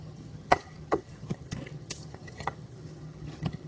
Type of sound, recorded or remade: remade